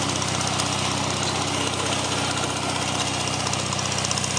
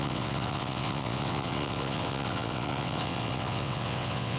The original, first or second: first